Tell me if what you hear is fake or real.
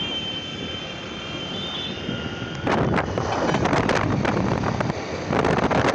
real